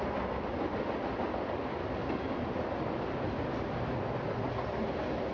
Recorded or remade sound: recorded